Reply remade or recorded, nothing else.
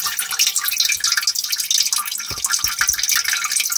recorded